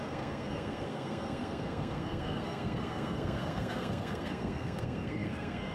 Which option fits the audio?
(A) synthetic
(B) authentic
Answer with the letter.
A